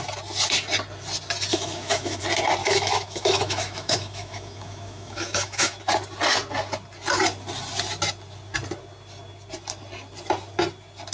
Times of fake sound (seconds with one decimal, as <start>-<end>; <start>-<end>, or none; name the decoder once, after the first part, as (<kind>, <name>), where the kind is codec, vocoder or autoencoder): 1.5-2.2 (autoencoder, DAC-VAE); 2.6-5.8